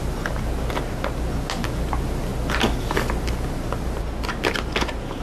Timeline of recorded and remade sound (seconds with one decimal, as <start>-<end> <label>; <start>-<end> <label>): 0.0-5.2 recorded